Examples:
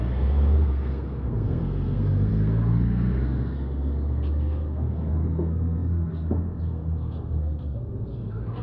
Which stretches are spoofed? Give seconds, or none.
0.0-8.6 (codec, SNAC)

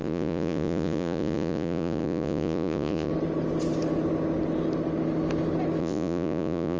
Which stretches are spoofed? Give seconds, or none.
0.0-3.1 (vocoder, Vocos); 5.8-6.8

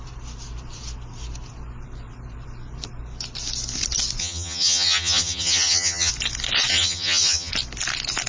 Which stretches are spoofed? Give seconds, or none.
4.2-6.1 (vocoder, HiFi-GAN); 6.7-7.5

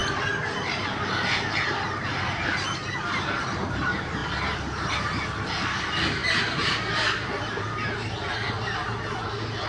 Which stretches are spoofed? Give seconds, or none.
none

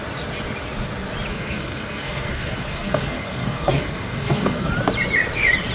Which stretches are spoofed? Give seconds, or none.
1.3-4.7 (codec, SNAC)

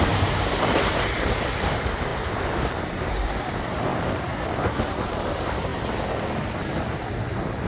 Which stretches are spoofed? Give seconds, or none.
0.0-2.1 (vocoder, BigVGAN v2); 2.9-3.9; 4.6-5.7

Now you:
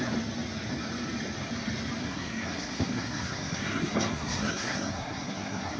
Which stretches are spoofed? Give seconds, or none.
2.0-5.8 (codec, SNAC)